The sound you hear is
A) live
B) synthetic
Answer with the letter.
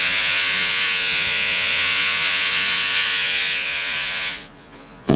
B